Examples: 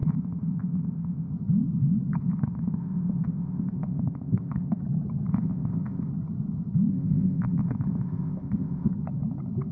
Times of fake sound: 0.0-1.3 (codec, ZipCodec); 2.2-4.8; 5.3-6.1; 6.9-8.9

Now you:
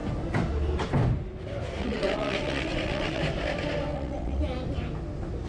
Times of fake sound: 1.8-3.2 (vocoder, WaveNeXt); 3.9-4.4

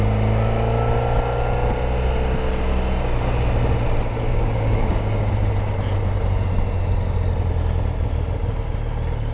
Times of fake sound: 4.3-5.3 (codec, DAC)